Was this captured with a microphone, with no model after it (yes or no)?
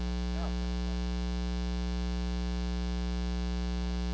yes